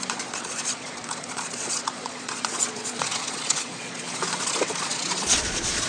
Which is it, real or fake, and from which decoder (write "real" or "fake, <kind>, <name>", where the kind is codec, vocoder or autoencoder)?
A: fake, vocoder, Vocos